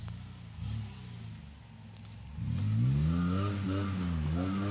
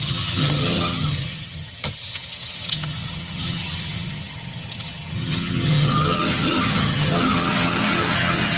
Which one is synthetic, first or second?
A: second